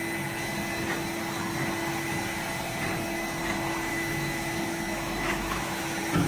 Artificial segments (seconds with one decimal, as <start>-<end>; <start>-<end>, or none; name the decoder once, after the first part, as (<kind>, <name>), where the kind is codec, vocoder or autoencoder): 3.9-6.3 (autoencoder, DAC-VAE)